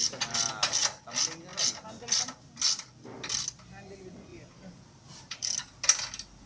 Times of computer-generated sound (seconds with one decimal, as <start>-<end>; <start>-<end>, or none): 4.3-5.5